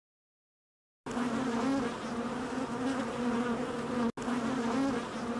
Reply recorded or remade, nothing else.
recorded